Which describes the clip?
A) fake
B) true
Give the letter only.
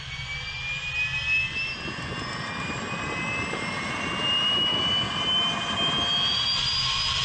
B